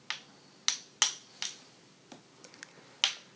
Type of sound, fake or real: real